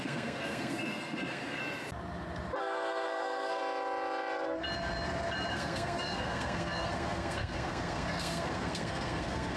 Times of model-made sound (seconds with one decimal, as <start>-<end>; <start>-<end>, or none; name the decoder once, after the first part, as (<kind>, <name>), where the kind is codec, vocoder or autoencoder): 0.0-1.6 (codec, SNAC); 2.6-3.6; 5.5-9.6